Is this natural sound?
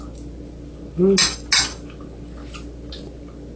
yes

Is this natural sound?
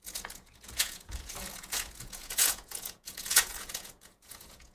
no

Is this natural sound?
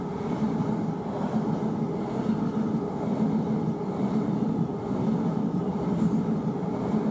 yes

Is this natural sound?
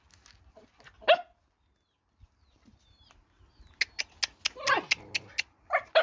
yes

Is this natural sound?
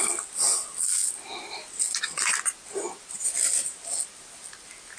yes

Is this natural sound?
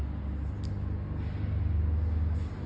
yes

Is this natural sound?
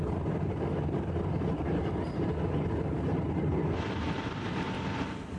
yes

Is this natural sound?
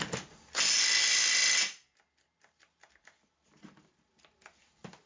yes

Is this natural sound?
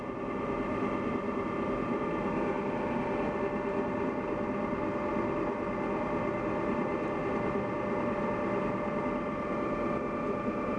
yes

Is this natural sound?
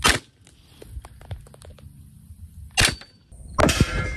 yes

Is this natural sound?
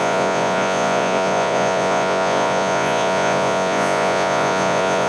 no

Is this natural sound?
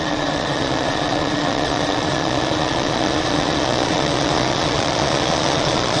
no